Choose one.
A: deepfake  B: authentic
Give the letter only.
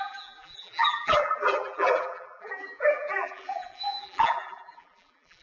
A